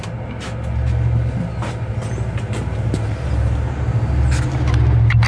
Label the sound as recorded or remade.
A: recorded